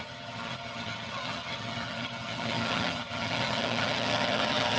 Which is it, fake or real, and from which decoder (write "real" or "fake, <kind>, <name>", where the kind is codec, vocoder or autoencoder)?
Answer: fake, vocoder, HiFi-GAN